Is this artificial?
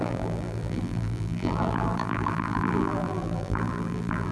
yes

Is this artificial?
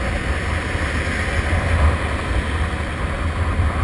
no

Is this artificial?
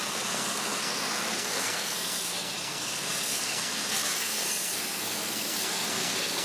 yes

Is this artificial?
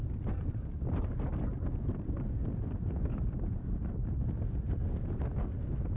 no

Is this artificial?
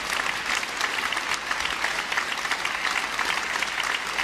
no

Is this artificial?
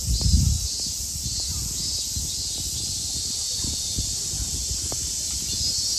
no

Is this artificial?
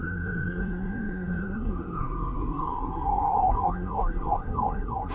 yes